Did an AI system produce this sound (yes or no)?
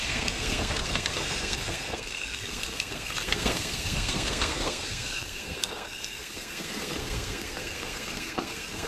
yes